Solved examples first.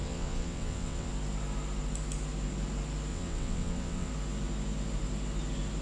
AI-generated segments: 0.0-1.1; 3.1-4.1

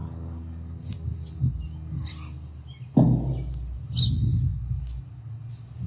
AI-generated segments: none

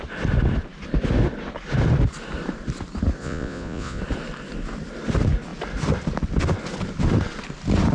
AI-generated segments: 3.2-4.0

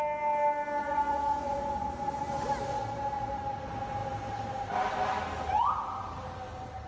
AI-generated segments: 0.8-2.1